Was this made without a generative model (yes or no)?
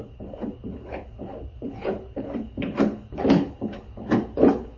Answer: no